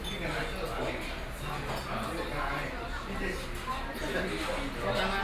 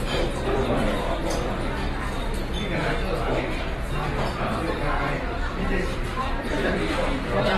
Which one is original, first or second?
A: first